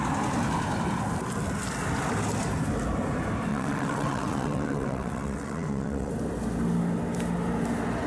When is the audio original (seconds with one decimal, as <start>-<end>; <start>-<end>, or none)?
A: 0.0-3.5; 6.1-8.1